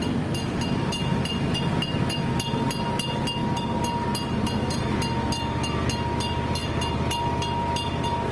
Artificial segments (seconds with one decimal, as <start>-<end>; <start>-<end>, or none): none